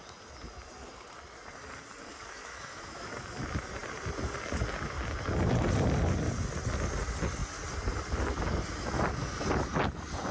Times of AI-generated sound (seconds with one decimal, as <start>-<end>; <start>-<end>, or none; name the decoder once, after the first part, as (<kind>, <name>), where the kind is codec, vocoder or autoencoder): 2.1-3.1 (autoencoder, DAC-VAE)